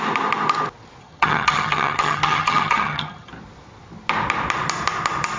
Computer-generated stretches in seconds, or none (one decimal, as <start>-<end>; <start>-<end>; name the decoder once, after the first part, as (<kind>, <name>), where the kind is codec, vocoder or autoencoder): 1.0-3.3 (vocoder, HiFi-GAN)